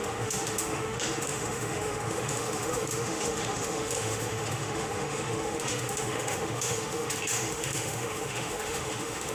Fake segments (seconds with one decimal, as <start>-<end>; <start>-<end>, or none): 0.0-9.3